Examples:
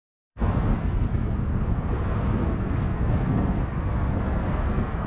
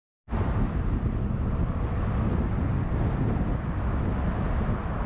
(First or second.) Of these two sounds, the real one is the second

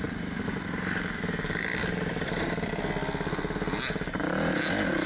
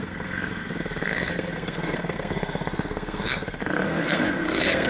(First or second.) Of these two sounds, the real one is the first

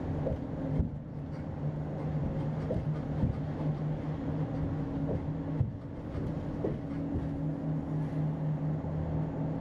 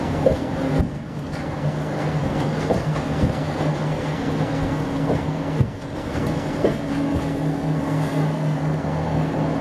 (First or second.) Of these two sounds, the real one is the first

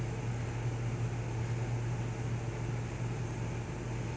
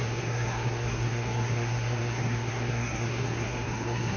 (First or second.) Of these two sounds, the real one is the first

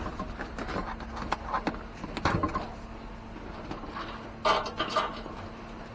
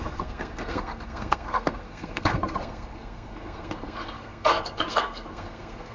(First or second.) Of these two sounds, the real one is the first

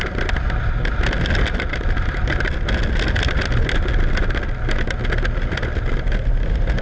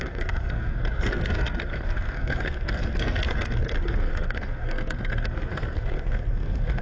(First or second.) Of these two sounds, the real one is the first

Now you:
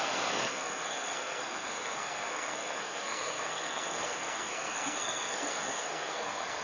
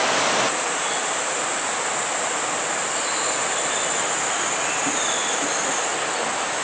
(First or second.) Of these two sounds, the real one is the second